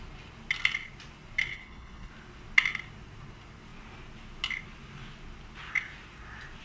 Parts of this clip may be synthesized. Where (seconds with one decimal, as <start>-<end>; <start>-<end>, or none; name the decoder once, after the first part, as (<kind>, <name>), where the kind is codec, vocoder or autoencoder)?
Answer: 1.5-2.1 (codec, HILCodec)

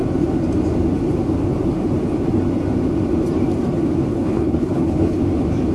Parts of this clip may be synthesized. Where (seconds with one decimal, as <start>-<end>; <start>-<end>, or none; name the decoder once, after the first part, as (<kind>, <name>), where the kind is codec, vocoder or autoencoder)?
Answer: 4.1-5.2 (codec, HILCodec)

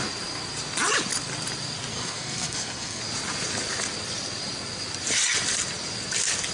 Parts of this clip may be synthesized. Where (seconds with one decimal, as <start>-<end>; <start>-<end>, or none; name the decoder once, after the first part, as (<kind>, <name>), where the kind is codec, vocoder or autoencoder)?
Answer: 1.9-3.0 (codec, SNAC)

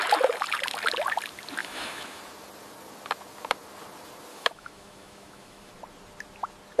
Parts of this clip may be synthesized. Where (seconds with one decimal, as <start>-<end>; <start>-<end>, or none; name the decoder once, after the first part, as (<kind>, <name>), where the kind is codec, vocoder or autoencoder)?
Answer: 1.6-2.2 (autoencoder, DAC-VAE); 4.3-5.7

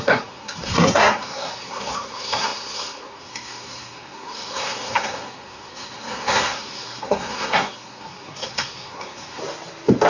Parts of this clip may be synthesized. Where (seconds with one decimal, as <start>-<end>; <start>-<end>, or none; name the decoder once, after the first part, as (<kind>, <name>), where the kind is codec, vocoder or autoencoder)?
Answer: 0.0-9.4 (codec, SNAC)